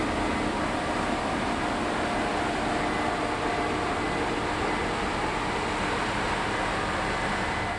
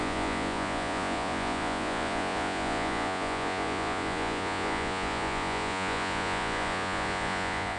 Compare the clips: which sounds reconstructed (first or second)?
second